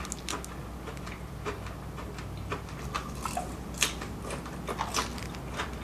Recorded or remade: recorded